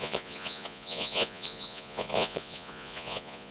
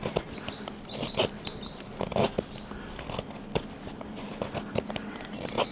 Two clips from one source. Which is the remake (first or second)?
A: first